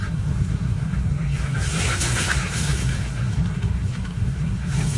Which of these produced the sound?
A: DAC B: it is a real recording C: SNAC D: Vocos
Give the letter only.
C